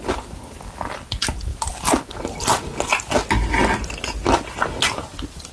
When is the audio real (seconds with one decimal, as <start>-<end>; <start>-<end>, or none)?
0.0-5.5